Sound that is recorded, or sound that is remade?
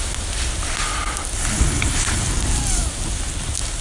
recorded